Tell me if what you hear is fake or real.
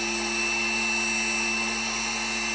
real